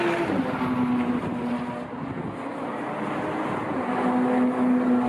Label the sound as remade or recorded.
recorded